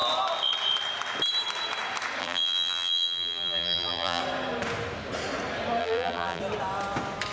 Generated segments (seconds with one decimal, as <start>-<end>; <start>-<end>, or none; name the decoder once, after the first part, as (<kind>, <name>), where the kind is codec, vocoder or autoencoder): 2.2-4.2 (vocoder, BigVGAN v2); 5.8-6.4